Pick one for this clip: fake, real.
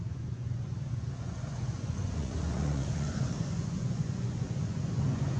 fake